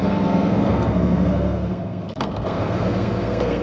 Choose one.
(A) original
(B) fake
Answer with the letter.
B